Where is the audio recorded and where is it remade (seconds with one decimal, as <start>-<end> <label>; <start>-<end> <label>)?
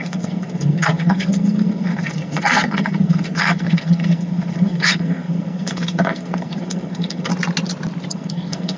0.0-7.3 remade; 7.3-8.1 recorded; 8.1-8.8 remade